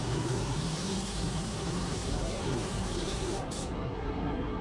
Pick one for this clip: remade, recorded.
remade